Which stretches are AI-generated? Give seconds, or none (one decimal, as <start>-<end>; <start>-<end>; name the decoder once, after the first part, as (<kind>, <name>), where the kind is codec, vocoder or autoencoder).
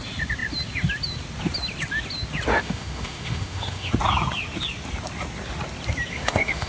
2.5-3.9 (autoencoder, DAC-VAE); 6.1-6.7